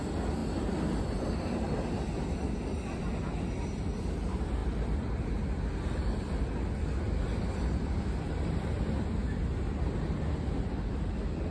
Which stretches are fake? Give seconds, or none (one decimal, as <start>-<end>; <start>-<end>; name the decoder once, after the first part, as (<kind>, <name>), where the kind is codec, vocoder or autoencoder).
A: none